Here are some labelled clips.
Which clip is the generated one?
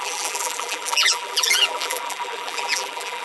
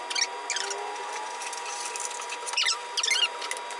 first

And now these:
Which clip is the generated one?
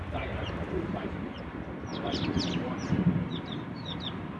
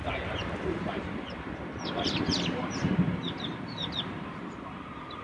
second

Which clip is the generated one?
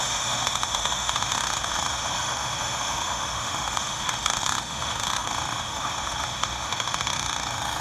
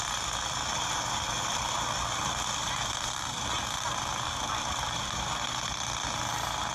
first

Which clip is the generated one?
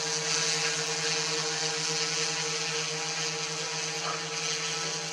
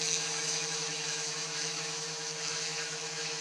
second